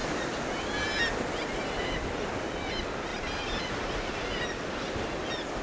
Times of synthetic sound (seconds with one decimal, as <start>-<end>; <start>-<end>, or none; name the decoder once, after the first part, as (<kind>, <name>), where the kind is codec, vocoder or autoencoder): 3.1-4.2 (vocoder, BigVGAN v2)